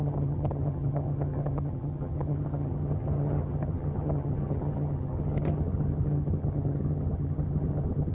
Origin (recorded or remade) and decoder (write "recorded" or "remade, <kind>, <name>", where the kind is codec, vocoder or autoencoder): remade, vocoder, HiFi-GAN